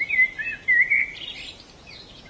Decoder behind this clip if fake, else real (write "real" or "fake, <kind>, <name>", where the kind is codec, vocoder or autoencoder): real